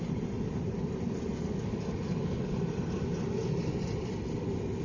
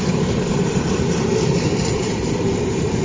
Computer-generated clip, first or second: second